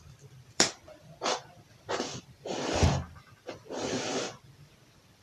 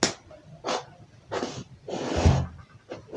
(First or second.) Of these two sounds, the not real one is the first